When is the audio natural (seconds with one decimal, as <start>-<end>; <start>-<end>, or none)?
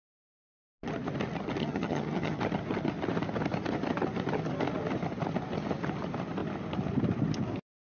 0.0-1.6; 2.4-7.9